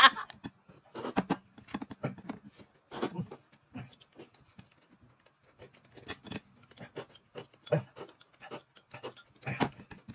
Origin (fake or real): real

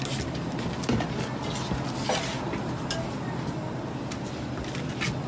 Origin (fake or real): real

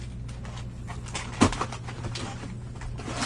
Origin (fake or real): real